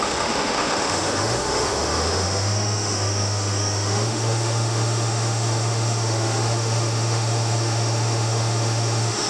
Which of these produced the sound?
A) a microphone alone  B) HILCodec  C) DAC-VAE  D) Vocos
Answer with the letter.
C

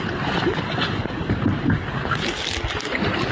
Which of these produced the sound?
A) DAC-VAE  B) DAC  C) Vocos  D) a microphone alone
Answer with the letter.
D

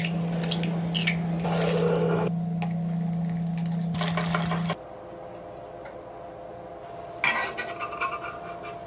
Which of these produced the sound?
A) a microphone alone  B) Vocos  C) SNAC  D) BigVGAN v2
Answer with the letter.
A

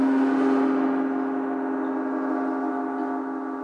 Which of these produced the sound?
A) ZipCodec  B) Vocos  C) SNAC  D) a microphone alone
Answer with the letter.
D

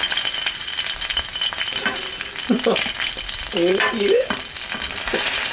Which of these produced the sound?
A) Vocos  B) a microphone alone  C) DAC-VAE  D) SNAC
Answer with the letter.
B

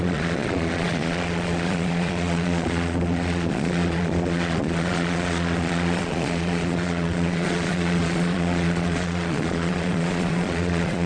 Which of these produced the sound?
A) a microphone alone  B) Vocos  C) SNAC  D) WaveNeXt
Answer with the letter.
B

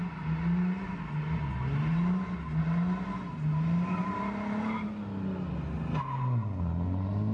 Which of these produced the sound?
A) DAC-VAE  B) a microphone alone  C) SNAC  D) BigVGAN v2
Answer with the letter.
B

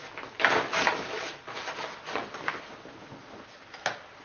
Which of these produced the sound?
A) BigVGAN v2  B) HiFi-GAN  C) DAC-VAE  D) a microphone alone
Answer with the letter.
D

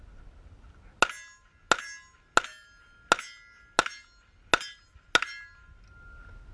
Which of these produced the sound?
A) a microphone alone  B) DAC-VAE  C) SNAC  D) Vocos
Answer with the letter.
A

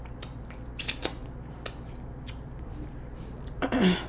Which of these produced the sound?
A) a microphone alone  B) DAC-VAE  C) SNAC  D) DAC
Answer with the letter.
A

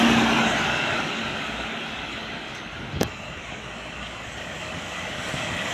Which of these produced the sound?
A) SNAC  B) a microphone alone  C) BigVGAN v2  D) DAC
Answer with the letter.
D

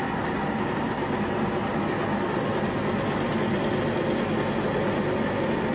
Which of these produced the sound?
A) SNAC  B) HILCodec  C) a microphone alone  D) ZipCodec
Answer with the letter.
C